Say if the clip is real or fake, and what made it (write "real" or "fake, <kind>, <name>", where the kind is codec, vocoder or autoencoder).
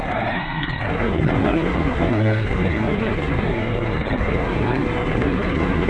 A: fake, codec, SNAC